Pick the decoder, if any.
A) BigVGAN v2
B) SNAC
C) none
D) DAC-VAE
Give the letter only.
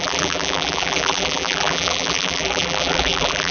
A